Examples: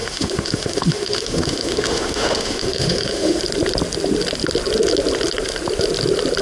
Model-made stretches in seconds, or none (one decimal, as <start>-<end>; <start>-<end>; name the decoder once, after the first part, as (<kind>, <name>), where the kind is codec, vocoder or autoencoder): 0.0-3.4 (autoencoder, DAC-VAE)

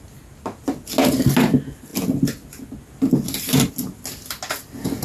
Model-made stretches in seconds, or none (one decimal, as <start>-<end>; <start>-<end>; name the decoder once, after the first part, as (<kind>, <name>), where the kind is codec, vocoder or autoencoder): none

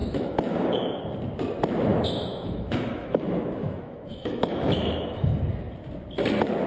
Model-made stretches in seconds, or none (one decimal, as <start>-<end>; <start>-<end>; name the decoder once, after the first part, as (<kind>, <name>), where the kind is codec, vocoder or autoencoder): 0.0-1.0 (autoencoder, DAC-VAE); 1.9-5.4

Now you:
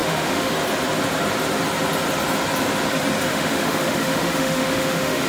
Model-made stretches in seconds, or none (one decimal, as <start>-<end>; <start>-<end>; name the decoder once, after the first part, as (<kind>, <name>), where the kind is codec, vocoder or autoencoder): 0.0-0.5 (autoencoder, DAC-VAE); 3.3-5.3

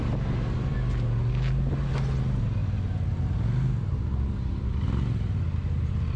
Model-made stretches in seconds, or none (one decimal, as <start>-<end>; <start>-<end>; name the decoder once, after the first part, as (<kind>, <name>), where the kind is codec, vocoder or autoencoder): none

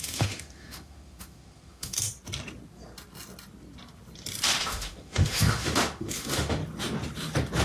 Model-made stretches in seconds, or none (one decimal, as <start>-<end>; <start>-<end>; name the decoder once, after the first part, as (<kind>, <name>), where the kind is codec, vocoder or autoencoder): 0.0-2.1 (autoencoder, DAC-VAE); 4.6-6.6